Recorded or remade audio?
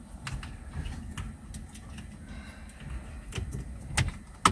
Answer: recorded